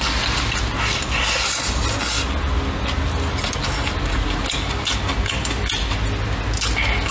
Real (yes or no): yes